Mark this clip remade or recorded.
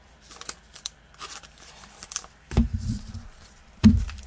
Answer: remade